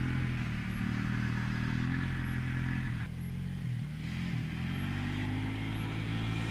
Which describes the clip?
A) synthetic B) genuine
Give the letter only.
B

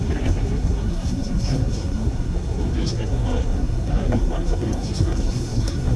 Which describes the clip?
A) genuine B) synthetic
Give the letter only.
B